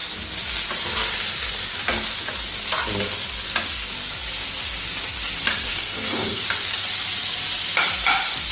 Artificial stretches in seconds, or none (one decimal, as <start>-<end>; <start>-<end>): 5.7-6.4

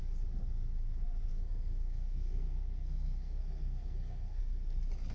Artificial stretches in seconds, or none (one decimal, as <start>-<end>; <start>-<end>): 1.3-4.4

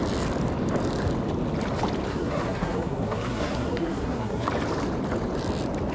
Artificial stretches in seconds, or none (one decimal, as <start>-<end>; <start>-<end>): 2.1-4.5

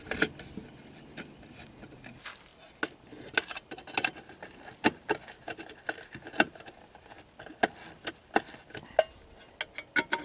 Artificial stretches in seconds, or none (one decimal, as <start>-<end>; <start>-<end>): none

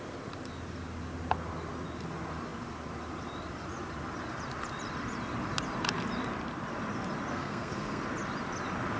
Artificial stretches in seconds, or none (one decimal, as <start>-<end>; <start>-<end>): 7.3-8.0

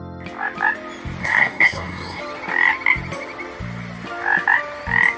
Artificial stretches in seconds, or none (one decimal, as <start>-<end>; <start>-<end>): 1.2-2.2

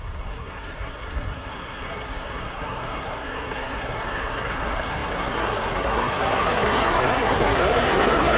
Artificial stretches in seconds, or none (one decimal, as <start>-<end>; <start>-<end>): 0.0-8.4